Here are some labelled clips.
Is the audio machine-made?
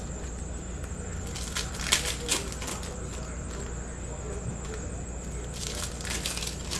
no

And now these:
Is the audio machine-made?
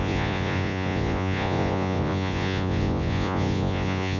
yes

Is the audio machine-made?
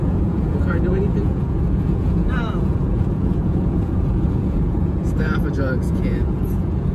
yes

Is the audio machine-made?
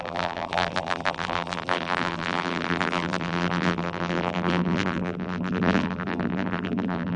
yes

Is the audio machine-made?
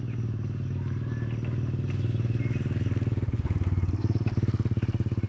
no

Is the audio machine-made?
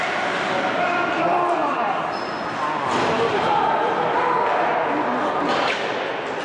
no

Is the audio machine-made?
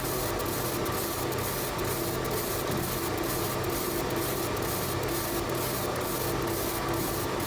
no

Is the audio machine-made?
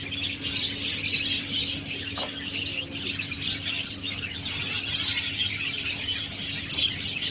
no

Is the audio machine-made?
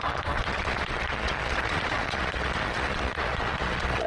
yes